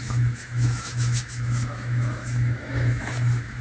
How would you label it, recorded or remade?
remade